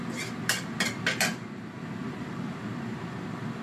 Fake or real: real